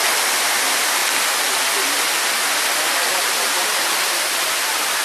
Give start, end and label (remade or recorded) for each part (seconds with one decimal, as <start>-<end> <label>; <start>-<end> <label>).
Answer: 0.0-3.7 recorded; 3.7-5.0 remade